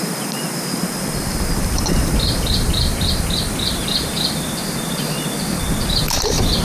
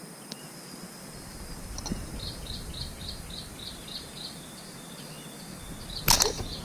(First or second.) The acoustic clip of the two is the second